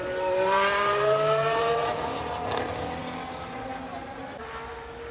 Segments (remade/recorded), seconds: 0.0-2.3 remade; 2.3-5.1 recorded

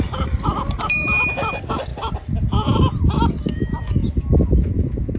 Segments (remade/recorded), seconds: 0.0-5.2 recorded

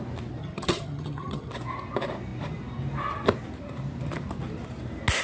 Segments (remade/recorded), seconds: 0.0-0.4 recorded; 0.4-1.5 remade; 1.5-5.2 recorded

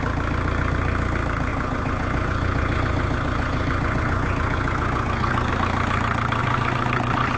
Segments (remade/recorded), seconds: 0.0-1.5 recorded; 1.5-5.5 remade; 5.5-6.4 recorded; 6.4-7.4 remade